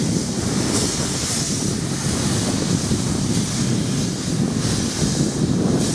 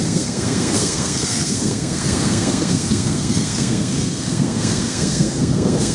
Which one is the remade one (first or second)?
second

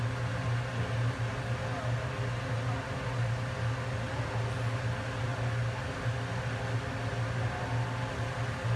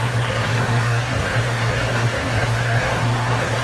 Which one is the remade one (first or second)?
second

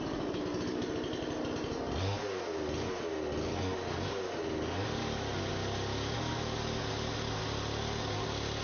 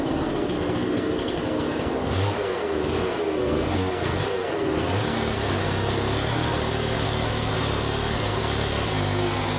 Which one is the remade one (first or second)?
second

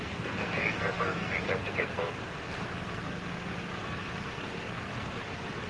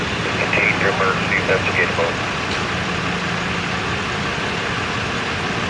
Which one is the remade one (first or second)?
first